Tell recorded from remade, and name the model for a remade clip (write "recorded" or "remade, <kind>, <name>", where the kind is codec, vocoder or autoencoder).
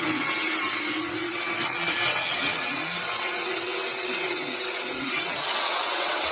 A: remade, vocoder, WaveNeXt